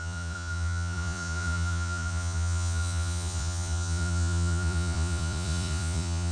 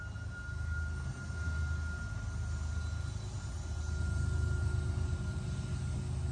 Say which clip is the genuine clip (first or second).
second